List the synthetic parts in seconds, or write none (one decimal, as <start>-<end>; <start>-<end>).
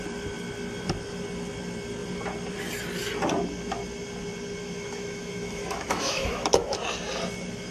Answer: 4.6-6.8